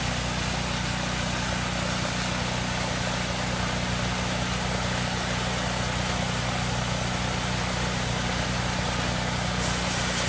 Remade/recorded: recorded